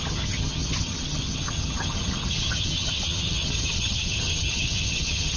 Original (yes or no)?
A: no